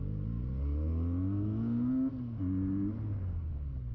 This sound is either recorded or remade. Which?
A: recorded